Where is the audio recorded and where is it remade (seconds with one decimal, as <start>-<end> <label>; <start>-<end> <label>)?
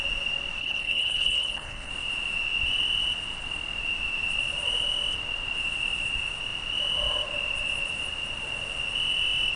0.0-0.6 recorded; 0.6-1.9 remade; 1.9-9.6 recorded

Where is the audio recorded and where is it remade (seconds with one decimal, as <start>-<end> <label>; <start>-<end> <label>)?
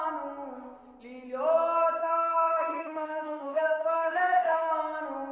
0.0-2.0 recorded; 2.0-4.7 remade; 4.7-5.3 recorded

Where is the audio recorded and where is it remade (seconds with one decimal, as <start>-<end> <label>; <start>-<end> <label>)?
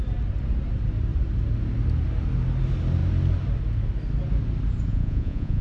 0.0-4.9 recorded; 4.9-5.6 remade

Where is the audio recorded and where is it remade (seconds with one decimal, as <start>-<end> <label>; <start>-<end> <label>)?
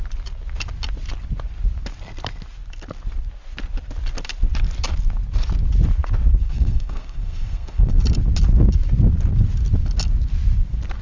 0.0-6.4 recorded; 6.4-7.9 remade; 7.9-11.0 recorded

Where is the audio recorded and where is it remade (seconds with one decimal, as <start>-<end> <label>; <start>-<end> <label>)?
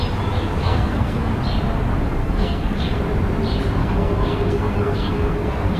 0.0-0.6 recorded; 0.6-1.3 remade; 1.3-2.2 recorded; 2.2-3.0 remade; 3.0-3.8 recorded; 3.8-5.8 remade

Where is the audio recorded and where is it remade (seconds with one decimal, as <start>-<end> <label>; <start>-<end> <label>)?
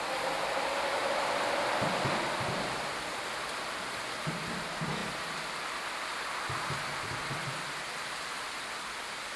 0.0-9.4 recorded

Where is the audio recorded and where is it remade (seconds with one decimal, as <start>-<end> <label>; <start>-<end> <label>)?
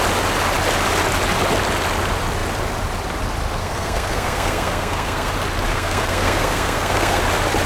0.0-3.6 recorded; 3.6-5.3 remade; 5.3-5.7 recorded; 5.7-7.2 remade; 7.2-7.7 recorded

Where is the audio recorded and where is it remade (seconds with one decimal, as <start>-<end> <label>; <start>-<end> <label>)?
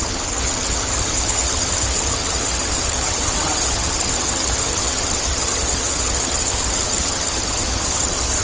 0.0-8.4 remade